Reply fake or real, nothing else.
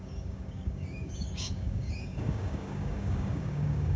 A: fake